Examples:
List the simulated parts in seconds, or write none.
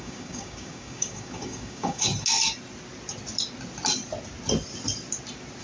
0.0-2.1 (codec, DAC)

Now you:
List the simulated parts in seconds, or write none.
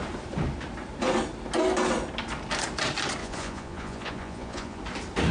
3.2-4.8 (vocoder, Vocos)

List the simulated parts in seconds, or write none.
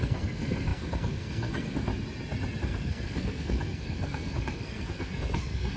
0.0-1.9 (codec, SNAC); 2.6-5.8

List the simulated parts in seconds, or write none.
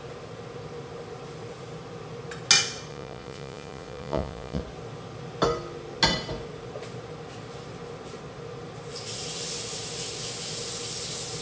2.9-4.6 (vocoder, Vocos)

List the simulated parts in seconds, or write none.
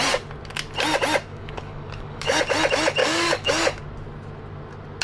1.3-2.4 (codec, DAC); 3.0-3.5